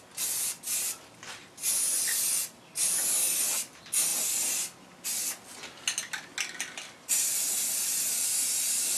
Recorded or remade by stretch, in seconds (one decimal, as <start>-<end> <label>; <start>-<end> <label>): 0.0-9.0 recorded